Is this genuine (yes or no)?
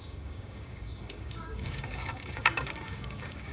no